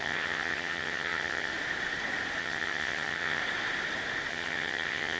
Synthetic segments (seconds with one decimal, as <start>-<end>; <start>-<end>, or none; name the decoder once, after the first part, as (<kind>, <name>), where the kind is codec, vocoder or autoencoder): 0.0-1.5 (vocoder, HiFi-GAN); 2.4-3.4; 4.3-5.2